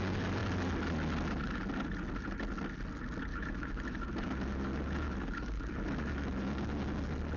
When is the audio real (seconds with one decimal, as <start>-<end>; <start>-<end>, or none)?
0.0-3.3; 7.0-7.4